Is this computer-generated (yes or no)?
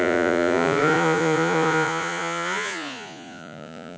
yes